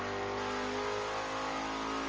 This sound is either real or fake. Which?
real